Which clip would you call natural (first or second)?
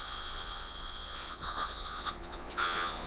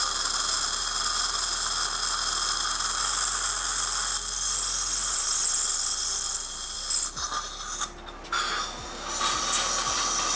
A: second